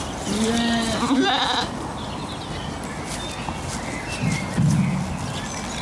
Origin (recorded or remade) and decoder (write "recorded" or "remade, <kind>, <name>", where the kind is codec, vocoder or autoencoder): recorded